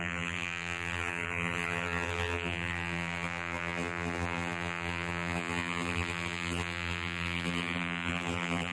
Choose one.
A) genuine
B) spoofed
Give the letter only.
B